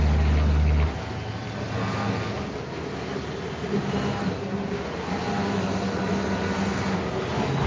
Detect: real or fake real